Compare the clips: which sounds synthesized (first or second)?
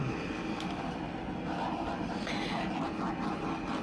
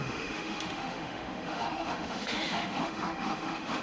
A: second